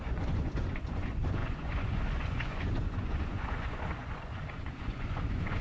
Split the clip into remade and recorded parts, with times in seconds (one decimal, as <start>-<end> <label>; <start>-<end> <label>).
0.0-5.6 remade